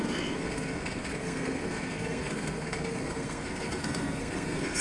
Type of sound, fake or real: fake